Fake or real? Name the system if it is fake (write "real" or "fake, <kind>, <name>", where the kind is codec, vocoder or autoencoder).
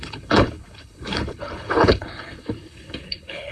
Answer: fake, codec, HILCodec